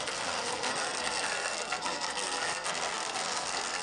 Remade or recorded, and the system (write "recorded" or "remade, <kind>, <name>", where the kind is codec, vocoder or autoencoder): remade, codec, SNAC